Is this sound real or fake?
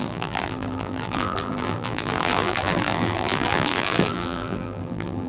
fake